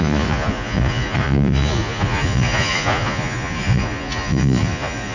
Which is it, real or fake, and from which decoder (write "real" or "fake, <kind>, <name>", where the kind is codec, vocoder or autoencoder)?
fake, vocoder, Vocos